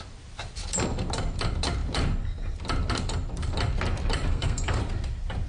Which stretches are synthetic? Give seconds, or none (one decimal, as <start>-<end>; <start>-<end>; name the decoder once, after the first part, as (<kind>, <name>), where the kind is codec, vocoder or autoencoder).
4.3-4.8 (codec, SNAC)